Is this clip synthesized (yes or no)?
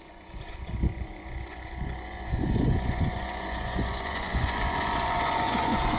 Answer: yes